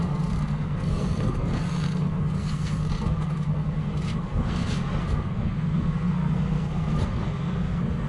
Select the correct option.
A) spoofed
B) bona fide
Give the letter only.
A